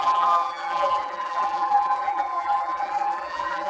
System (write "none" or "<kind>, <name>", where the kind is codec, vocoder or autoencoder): vocoder, BigVGAN v2